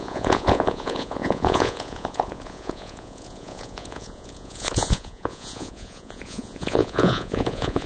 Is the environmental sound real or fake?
fake